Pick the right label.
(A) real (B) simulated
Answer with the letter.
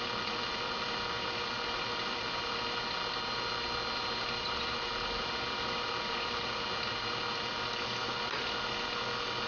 A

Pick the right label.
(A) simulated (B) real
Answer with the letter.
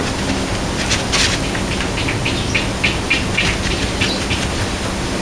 B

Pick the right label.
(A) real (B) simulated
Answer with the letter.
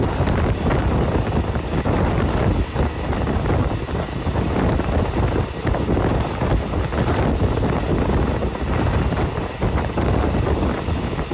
A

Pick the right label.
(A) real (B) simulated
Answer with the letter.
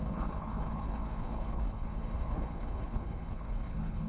B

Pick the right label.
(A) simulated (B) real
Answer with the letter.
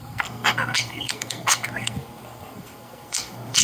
A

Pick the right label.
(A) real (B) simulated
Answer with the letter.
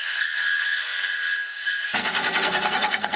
B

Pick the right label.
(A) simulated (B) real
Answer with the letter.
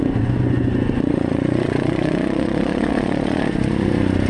A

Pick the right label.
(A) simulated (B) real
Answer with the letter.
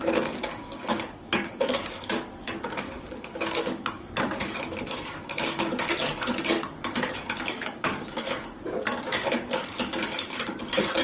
A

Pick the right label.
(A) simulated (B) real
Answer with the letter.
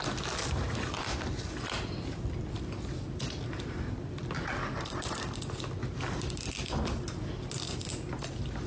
B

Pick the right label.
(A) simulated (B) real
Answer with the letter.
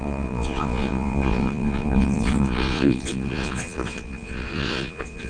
A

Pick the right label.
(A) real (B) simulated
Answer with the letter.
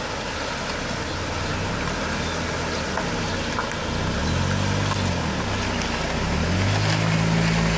A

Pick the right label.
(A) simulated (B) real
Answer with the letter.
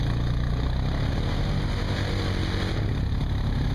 B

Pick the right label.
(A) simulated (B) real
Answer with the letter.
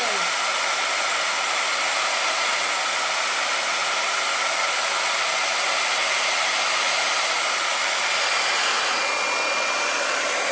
B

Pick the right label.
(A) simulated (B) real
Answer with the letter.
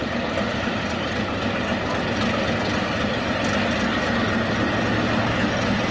B